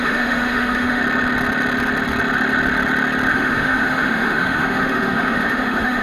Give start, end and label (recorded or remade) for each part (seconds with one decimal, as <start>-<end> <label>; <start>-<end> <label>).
0.0-1.0 remade; 1.0-3.3 recorded; 3.3-6.0 remade